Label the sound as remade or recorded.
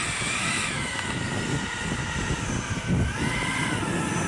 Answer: recorded